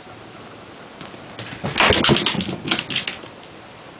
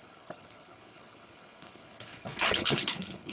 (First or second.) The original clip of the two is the first